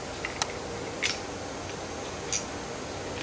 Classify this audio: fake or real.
real